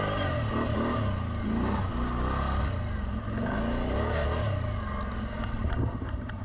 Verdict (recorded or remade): recorded